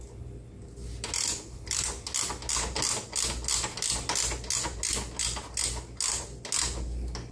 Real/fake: real